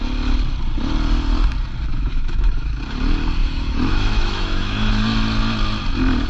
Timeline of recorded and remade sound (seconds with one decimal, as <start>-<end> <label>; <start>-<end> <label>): 0.0-1.9 recorded; 1.9-2.8 remade; 2.8-3.4 recorded; 3.4-4.9 remade; 4.9-6.3 recorded